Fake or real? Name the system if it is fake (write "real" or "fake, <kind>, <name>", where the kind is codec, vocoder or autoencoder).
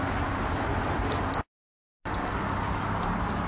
real